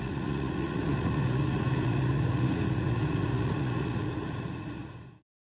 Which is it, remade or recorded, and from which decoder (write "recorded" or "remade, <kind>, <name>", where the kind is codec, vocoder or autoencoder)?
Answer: remade, vocoder, Vocos